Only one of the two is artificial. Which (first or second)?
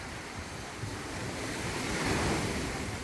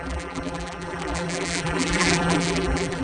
second